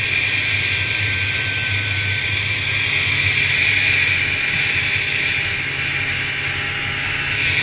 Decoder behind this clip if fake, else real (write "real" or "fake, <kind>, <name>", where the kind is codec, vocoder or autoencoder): real